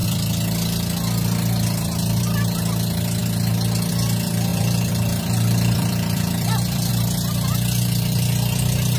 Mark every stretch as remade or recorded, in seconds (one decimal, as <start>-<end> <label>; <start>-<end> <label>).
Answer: 0.0-4.5 recorded; 4.5-6.9 remade; 6.9-9.0 recorded